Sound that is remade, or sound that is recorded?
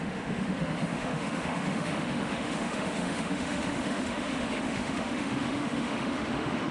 remade